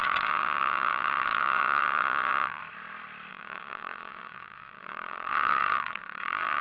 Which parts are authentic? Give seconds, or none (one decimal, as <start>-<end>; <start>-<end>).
2.6-3.3